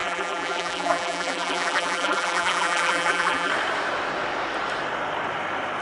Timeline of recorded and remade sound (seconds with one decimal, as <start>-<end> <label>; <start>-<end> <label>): 0.0-3.5 remade; 3.5-5.8 recorded

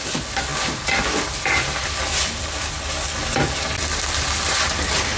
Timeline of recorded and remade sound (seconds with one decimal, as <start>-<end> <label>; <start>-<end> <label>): 0.0-5.2 recorded